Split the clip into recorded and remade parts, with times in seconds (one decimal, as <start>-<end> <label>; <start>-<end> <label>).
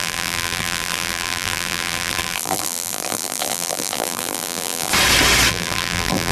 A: 0.0-4.9 remade; 4.9-5.5 recorded; 5.5-6.3 remade